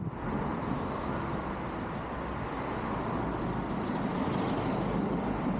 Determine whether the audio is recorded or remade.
recorded